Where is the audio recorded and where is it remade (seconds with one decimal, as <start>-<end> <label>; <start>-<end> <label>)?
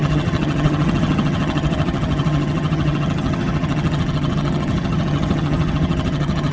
0.0-6.5 remade